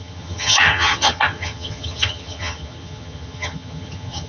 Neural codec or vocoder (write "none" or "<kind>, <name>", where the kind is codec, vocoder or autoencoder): vocoder, HiFi-GAN